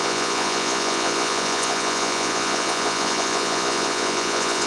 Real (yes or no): no